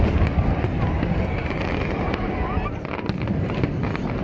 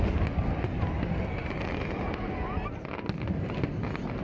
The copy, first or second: first